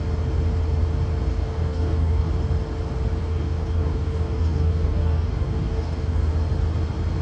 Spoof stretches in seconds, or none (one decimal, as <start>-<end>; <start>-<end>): 1.3-2.3; 3.2-6.3